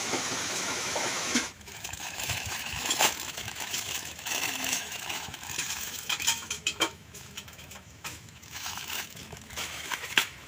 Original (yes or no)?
no